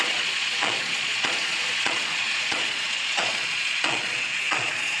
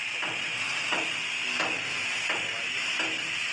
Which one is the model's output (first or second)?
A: first